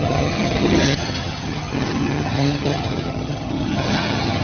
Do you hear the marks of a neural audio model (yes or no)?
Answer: yes